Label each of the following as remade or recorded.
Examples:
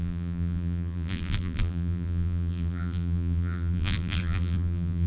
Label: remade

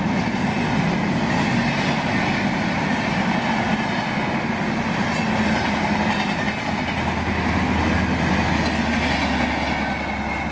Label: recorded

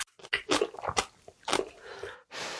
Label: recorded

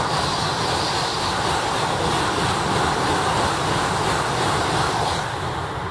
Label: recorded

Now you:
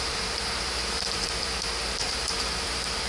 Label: remade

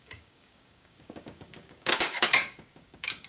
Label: remade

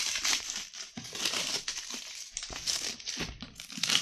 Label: remade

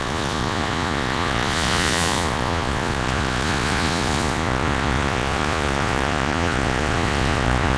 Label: remade